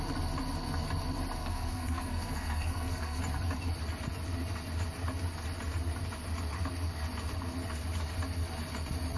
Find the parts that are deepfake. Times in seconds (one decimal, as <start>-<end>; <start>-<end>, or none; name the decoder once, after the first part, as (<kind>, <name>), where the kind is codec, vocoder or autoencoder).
1.4-3.2 (codec, SNAC)